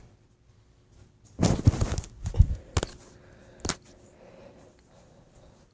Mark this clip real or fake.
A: real